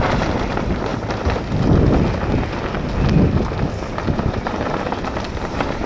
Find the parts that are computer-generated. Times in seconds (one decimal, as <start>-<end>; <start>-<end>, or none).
0.0-0.9; 4.1-5.9